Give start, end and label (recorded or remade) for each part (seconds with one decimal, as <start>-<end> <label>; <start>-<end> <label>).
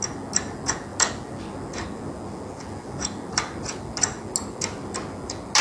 0.0-5.6 recorded